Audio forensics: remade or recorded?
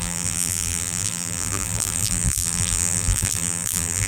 remade